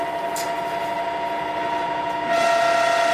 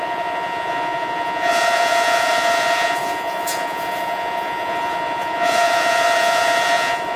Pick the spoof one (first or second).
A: second